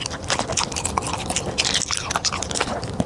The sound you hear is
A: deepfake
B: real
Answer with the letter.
B